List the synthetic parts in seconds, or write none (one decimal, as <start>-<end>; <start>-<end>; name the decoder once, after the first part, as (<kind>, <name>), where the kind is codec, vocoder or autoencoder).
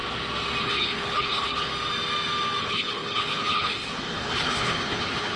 0.6-1.7 (codec, HILCodec); 2.6-5.4